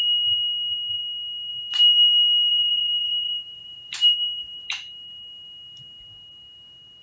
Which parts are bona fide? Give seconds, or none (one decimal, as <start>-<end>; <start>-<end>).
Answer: 0.0-2.5; 4.7-7.0